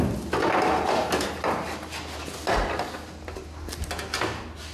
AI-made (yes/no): no